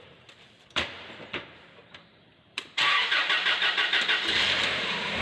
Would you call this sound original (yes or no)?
no